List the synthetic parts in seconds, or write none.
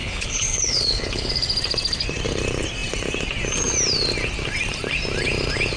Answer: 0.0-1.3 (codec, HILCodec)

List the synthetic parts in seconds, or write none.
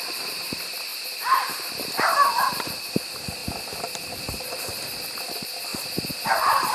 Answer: none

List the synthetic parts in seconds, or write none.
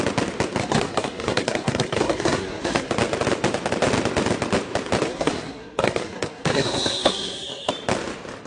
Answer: 0.6-2.9 (codec, SNAC); 5.1-7.7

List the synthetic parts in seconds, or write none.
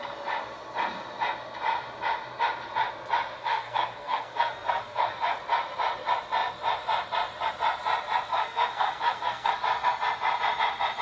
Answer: 3.4-5.1 (codec, SNAC); 8.3-9.5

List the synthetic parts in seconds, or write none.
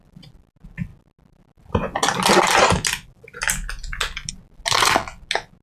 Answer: none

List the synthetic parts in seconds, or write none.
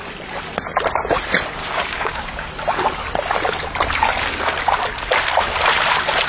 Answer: 1.6-2.5 (codec, DAC)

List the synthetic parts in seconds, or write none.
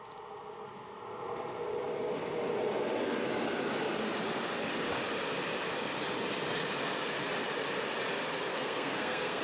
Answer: 8.5-9.4 (codec, SNAC)